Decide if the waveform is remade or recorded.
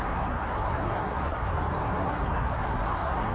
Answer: remade